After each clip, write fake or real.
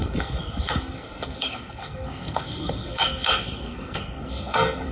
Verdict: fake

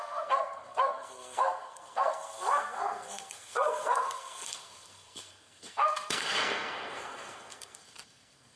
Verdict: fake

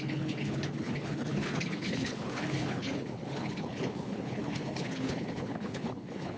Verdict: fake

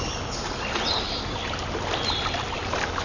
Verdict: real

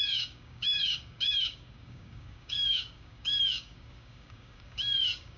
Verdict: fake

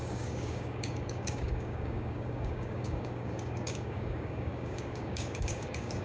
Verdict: fake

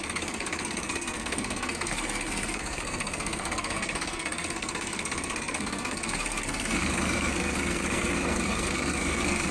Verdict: fake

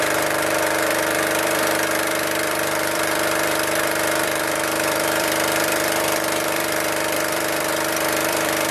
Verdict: fake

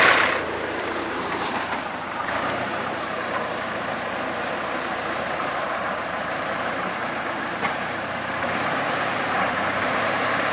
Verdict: fake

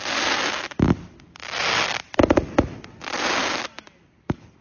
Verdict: real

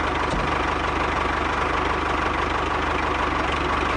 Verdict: real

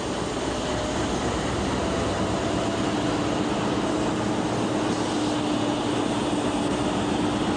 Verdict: real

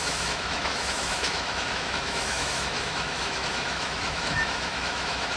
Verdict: fake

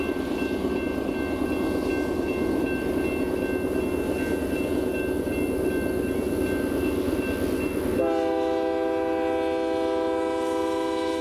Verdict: real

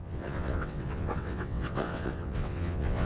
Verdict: fake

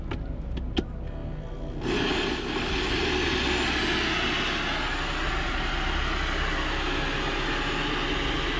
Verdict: real